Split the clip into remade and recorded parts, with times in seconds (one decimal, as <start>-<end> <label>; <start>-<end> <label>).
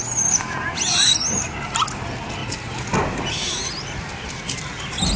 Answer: 0.0-5.2 recorded